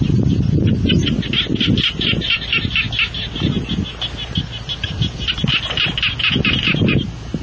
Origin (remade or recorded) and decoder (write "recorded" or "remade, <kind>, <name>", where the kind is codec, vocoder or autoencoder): recorded